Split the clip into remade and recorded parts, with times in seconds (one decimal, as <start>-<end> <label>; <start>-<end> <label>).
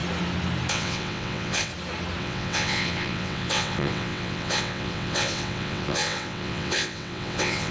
0.0-0.7 recorded; 0.7-1.7 remade; 1.7-2.2 recorded; 2.2-7.7 remade